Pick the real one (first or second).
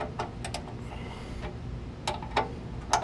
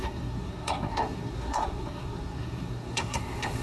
first